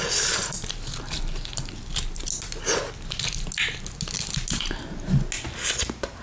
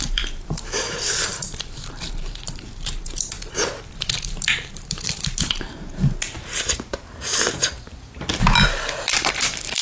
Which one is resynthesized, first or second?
second